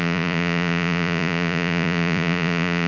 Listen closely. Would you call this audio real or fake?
fake